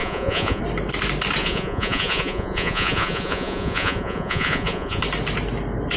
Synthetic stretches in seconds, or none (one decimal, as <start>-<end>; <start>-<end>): 0.0-0.6; 1.4-5.0